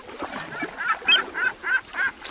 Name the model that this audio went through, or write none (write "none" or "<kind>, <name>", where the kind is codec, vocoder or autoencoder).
none